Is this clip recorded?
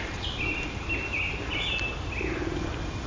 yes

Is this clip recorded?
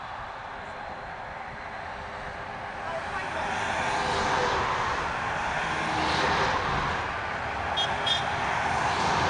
yes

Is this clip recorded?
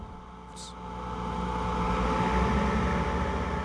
yes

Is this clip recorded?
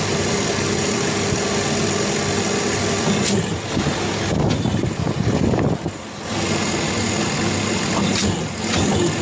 yes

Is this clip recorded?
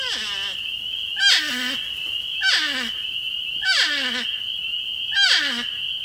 yes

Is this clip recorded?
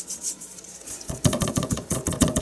no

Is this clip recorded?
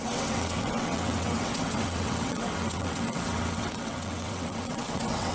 no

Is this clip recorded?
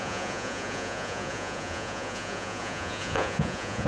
no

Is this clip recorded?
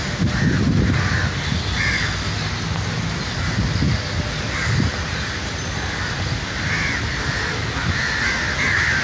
yes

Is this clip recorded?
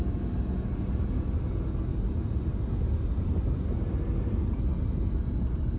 yes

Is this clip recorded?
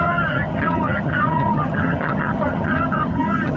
no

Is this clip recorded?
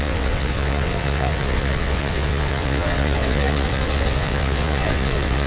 no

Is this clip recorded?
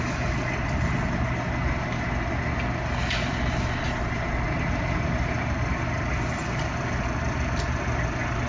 yes